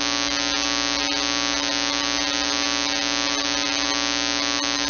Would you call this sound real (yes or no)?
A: yes